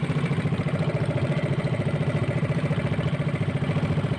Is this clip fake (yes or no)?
no